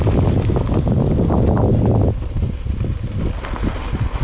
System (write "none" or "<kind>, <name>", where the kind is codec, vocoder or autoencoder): none